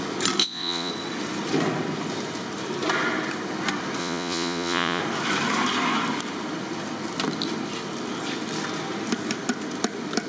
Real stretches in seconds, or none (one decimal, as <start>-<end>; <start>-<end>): 0.0-0.4; 0.9-4.0; 5.0-10.3